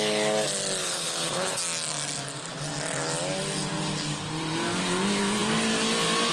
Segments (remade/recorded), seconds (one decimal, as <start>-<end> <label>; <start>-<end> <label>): 0.0-0.8 recorded; 0.8-1.6 remade; 1.6-6.3 recorded